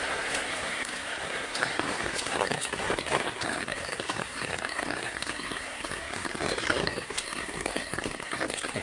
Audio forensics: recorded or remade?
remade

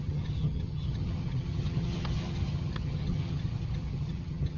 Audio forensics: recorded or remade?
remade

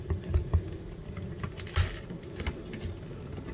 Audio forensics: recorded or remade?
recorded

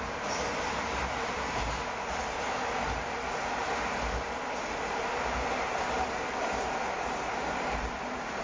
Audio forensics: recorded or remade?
remade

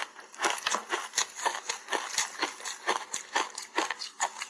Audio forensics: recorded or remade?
recorded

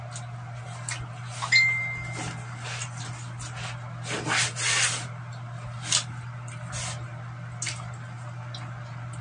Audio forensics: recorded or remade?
recorded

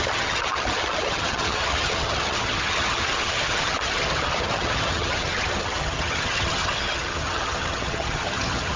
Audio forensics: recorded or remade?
remade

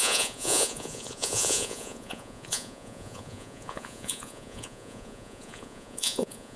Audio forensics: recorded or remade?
remade